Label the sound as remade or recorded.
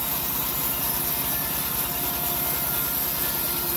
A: recorded